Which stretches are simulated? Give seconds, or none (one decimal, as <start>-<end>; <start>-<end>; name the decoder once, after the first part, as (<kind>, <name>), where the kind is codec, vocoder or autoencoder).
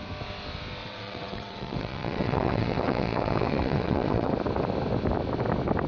0.8-4.3 (vocoder, WaveNeXt)